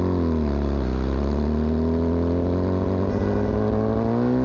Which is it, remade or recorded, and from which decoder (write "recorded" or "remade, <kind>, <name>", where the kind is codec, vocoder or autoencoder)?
recorded